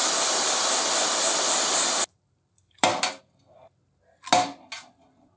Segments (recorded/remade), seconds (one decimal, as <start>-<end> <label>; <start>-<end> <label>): 0.0-3.2 remade; 3.2-5.4 recorded